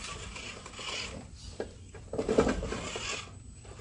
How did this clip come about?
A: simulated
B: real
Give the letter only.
B